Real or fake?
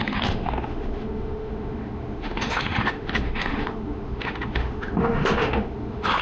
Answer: fake